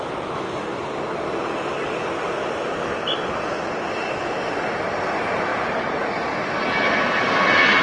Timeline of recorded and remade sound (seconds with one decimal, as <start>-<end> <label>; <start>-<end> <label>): 0.0-5.5 recorded; 5.5-6.0 remade; 6.0-7.8 recorded

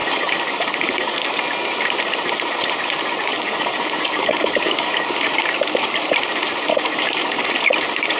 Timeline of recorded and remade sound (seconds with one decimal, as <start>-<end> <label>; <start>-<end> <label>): 0.0-1.2 remade; 1.2-3.3 recorded; 3.3-5.3 remade; 5.3-6.7 recorded; 6.7-7.5 remade; 7.5-8.2 recorded

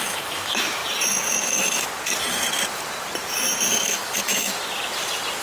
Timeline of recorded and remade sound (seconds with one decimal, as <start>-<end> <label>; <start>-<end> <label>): 0.0-0.8 remade; 0.8-1.4 recorded; 1.4-1.9 remade; 1.9-3.7 recorded; 3.7-4.5 remade; 4.5-5.4 recorded

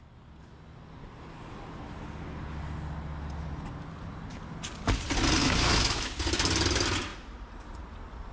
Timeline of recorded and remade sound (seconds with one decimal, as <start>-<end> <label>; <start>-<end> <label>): 0.0-5.4 recorded; 5.4-6.1 remade; 6.1-8.3 recorded

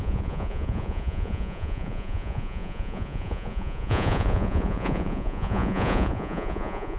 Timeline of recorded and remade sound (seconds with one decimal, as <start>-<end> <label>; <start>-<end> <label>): 0.0-7.0 remade

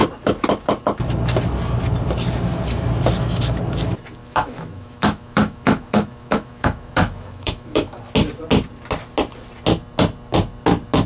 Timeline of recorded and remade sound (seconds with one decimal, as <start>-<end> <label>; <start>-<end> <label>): 0.0-4.2 recorded; 4.2-8.0 remade; 8.0-11.1 recorded

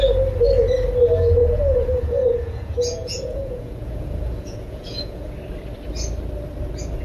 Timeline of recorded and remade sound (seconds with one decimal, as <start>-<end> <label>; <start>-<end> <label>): 0.0-1.4 recorded; 1.4-5.3 remade; 5.3-7.0 recorded